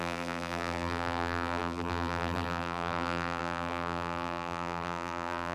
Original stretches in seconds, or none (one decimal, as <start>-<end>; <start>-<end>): none